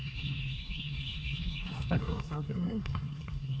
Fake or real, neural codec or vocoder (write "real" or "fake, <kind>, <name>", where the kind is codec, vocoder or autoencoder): fake, codec, SNAC